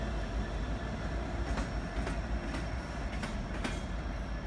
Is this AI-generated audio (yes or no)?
no